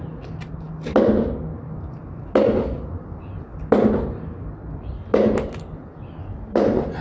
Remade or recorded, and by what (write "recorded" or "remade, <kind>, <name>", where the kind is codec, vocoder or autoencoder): recorded